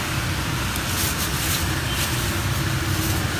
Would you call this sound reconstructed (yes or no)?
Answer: no